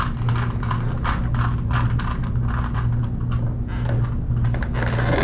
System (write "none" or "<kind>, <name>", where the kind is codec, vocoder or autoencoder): none